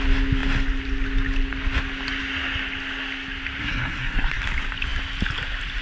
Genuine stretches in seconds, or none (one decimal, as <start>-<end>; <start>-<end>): 0.0-3.6; 4.4-5.8